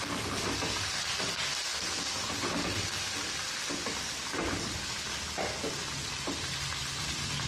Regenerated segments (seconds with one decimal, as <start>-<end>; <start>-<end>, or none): none